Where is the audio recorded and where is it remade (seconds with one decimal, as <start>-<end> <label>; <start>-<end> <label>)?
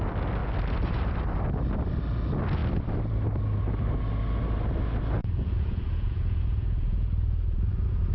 0.0-5.2 recorded; 5.2-8.1 remade